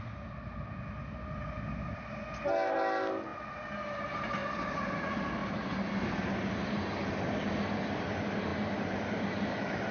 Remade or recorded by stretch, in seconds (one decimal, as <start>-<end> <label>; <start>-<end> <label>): 0.0-4.4 recorded; 4.4-4.9 remade; 4.9-9.9 recorded